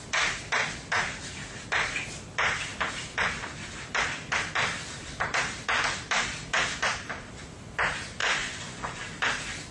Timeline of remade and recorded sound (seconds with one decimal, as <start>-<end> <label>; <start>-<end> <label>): 0.0-8.2 recorded; 8.2-9.0 remade; 9.0-9.7 recorded